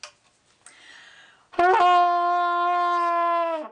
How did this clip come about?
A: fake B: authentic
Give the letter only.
B